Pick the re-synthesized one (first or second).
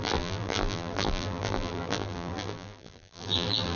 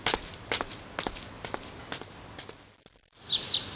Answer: first